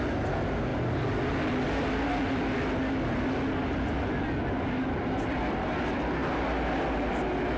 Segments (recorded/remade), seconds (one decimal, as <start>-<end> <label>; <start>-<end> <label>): 0.0-7.6 recorded